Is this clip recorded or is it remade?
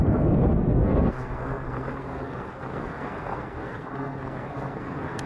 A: remade